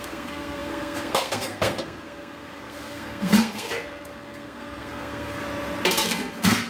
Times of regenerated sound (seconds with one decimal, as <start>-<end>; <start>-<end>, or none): 0.0-5.4; 5.9-6.7